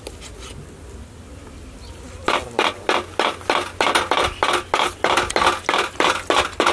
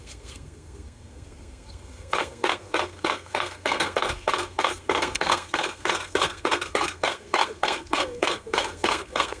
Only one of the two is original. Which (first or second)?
first